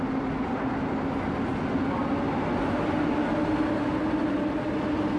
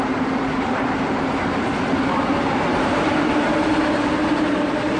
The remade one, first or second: second